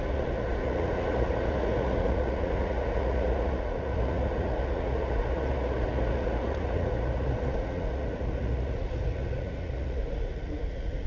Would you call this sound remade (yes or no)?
yes